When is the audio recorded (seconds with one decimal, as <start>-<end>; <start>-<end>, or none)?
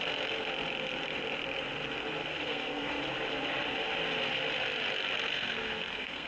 0.0-2.2; 3.0-5.3